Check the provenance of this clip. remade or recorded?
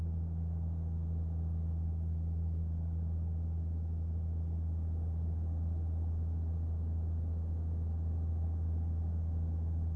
recorded